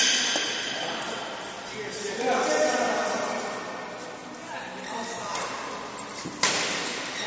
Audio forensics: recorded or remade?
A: recorded